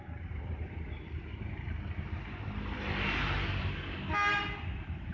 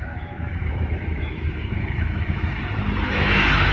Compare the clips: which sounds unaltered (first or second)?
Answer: first